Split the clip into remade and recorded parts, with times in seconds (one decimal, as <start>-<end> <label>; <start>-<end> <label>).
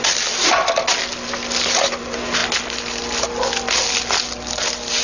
0.0-5.0 recorded